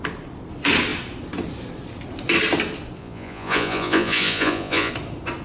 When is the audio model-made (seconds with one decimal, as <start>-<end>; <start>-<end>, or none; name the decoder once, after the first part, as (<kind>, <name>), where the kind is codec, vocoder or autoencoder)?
3.0-4.9 (vocoder, Vocos)